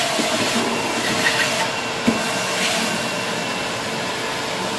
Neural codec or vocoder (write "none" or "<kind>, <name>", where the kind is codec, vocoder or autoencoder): none